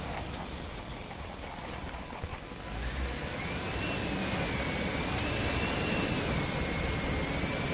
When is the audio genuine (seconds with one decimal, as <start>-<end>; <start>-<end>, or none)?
2.3-4.4